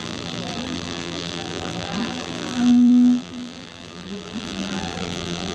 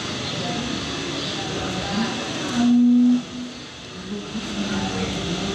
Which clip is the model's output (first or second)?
first